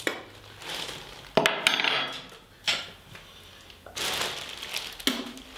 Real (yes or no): yes